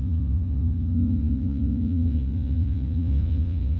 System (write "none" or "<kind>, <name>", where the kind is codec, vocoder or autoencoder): vocoder, Vocos